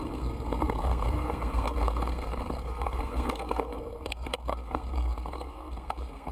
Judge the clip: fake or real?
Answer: fake